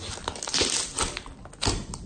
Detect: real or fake real